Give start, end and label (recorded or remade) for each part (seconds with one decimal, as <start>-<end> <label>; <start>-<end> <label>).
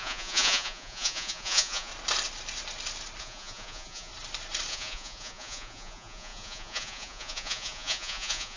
0.0-1.9 remade; 1.9-3.2 recorded; 3.2-4.1 remade; 4.1-4.7 recorded; 4.7-8.6 remade